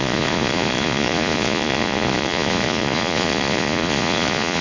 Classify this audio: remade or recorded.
remade